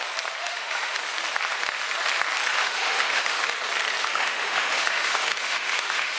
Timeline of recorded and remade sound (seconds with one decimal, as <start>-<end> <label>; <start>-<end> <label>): 0.0-0.4 recorded; 0.4-1.0 remade; 1.0-2.6 recorded; 2.6-3.4 remade; 3.4-4.0 recorded; 4.0-6.2 remade